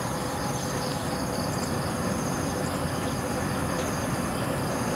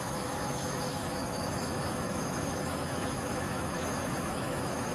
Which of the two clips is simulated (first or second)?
second